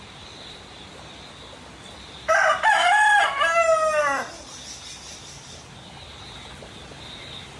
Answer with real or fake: real